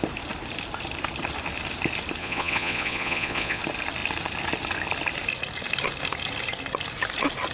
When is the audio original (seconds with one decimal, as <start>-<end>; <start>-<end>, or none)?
0.0-2.2; 3.6-7.5